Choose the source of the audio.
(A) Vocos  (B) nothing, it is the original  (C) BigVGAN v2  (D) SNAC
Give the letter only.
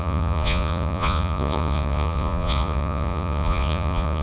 A